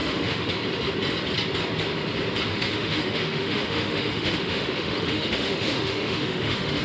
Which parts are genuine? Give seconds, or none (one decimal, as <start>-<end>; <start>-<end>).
0.5-2.5